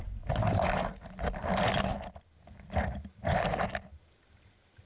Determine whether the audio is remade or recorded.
recorded